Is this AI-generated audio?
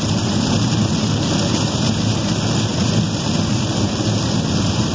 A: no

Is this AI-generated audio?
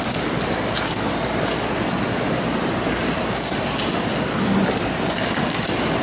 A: no